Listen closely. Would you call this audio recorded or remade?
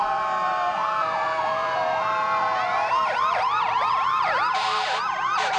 remade